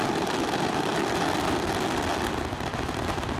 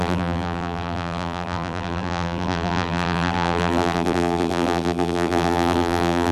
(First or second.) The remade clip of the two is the second